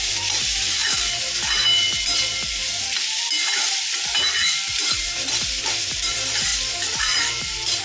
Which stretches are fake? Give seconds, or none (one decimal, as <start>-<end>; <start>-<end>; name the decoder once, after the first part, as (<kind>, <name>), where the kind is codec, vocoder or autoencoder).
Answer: 0.0-0.8 (vocoder, BigVGAN v2); 4.7-6.5; 7.0-7.8